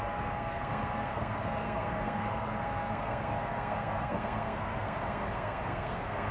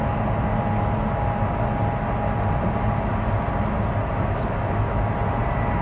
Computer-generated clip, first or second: first